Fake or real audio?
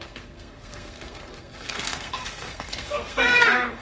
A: fake